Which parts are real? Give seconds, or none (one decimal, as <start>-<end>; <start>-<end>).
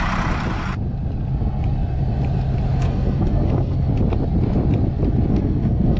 0.0-2.8; 3.9-5.3